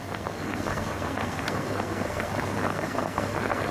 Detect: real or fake fake